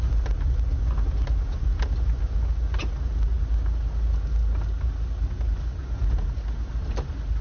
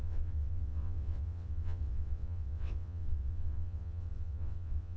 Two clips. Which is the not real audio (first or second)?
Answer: second